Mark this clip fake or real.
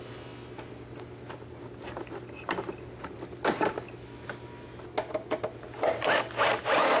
real